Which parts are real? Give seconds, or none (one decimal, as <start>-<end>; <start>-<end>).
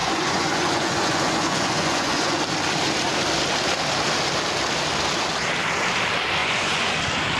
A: 2.4-6.4; 6.9-7.4